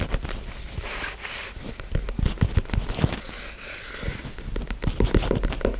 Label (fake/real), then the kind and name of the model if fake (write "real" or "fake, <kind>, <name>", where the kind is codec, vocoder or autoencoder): real